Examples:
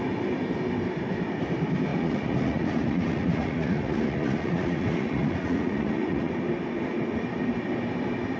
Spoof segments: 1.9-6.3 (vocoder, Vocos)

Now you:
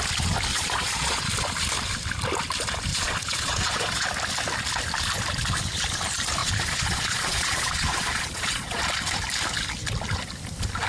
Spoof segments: 0.5-1.3 (vocoder, Vocos); 2.9-4.1; 6.4-8.8

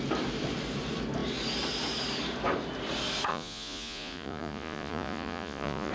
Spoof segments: 3.3-5.9 (vocoder, Vocos)

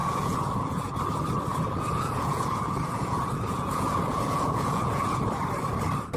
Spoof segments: 0.0-0.9 (vocoder, Vocos); 1.5-5.2

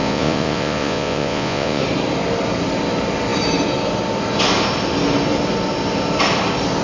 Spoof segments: 0.0-1.8 (vocoder, Vocos)